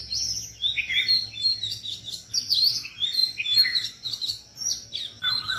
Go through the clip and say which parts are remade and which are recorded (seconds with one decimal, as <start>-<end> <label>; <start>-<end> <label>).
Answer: 0.0-1.7 recorded; 1.7-5.6 remade